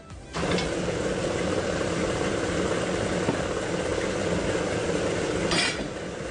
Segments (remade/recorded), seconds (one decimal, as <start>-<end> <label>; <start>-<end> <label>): 0.0-1.2 recorded; 1.2-2.3 remade; 2.3-6.3 recorded